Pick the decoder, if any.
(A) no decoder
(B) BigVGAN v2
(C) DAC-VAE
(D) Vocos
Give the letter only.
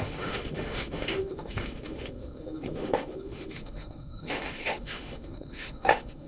C